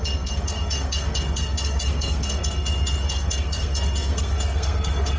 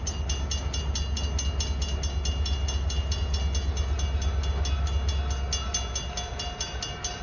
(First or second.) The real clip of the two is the second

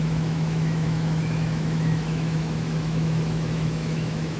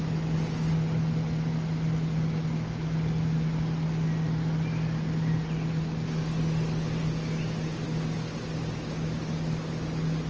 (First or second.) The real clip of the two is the second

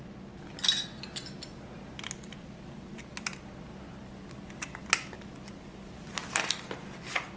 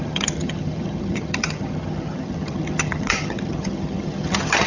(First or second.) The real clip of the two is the first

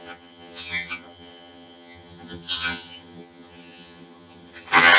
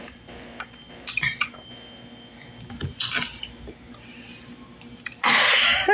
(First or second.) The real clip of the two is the second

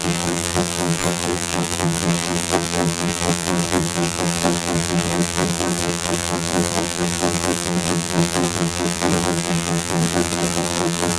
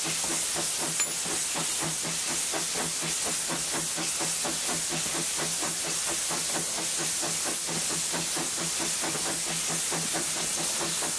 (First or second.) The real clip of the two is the second